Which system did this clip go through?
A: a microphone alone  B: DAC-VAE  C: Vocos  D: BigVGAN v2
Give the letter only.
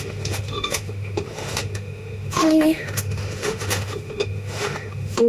B